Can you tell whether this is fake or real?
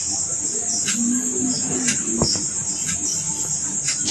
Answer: real